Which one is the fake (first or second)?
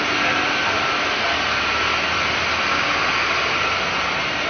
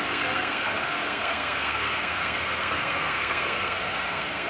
second